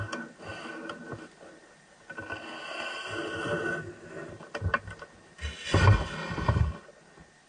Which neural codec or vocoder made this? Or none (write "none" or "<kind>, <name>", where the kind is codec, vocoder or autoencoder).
none